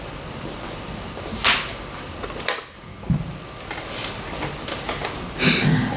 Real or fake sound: real